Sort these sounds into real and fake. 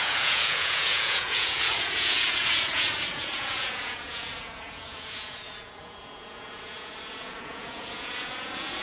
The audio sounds fake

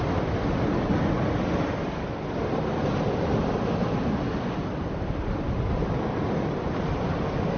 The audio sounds real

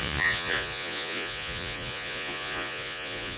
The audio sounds fake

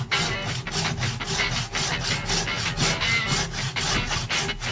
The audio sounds real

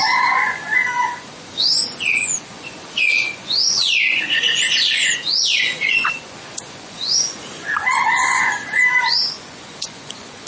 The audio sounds fake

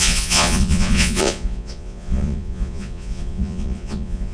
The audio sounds fake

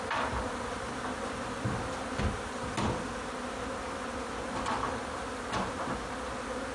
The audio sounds real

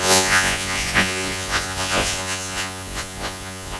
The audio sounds fake